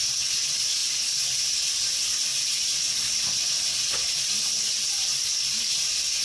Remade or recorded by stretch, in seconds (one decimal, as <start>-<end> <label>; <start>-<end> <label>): 0.0-6.2 recorded